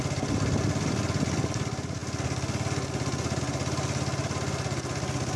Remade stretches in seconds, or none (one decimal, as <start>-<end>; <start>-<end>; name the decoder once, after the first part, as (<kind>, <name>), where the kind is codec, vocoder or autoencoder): none